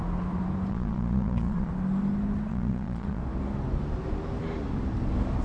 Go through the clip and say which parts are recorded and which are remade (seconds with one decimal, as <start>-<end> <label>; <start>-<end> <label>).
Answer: 0.0-0.7 recorded; 0.7-1.7 remade; 1.7-2.5 recorded; 2.5-3.2 remade; 3.2-5.4 recorded